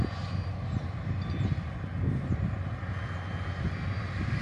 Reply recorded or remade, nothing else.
recorded